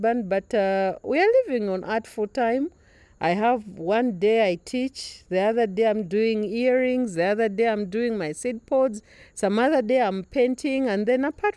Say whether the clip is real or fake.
real